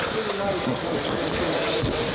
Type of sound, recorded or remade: recorded